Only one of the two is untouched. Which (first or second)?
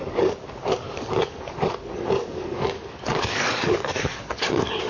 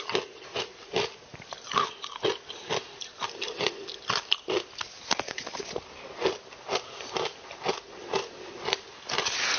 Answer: second